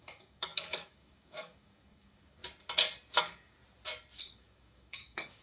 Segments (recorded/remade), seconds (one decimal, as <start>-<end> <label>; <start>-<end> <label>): 0.0-2.4 remade; 2.4-3.2 recorded; 3.2-3.6 remade; 3.6-4.2 recorded; 4.2-5.4 remade